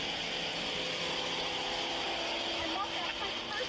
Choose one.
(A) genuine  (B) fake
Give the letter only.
A